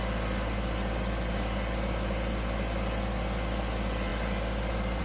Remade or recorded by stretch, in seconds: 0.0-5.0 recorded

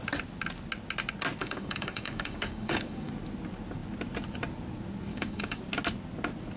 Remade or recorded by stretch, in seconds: 0.0-1.4 recorded; 1.4-3.1 remade; 3.1-5.1 recorded; 5.1-5.6 remade; 5.6-6.6 recorded